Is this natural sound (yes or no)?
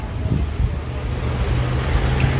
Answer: yes